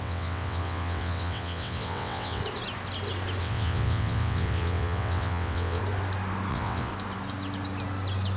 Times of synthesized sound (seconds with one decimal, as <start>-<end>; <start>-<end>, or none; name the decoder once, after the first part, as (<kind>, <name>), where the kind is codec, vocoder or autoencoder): 0.0-2.4 (vocoder, WaveNeXt); 3.4-5.8; 6.5-6.9